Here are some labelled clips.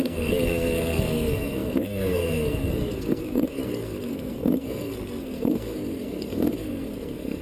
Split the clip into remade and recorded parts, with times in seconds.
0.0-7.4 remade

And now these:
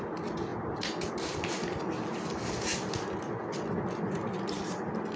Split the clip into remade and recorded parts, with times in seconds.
0.0-5.2 recorded

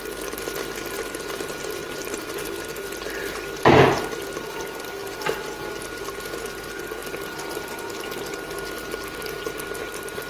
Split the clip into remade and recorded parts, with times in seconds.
0.0-1.8 recorded; 1.8-2.5 remade; 2.5-10.3 recorded

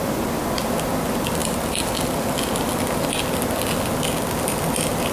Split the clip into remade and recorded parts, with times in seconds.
0.0-5.1 recorded

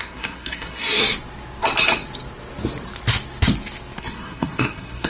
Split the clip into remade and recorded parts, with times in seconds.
0.0-1.0 remade; 1.0-4.0 recorded; 4.0-5.1 remade

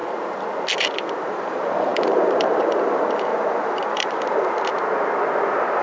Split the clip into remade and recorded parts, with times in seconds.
0.0-1.2 recorded; 1.2-4.7 remade; 4.7-5.8 recorded

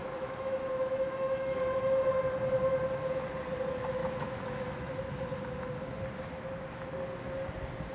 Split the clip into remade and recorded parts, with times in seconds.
0.0-2.2 remade; 2.2-4.0 recorded; 4.0-4.9 remade; 4.9-7.9 recorded

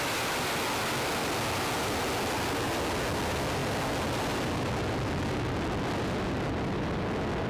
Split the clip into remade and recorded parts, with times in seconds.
0.0-7.5 recorded